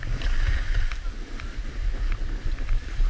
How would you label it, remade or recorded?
remade